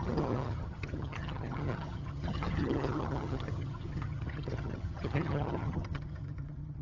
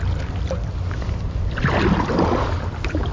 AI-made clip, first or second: first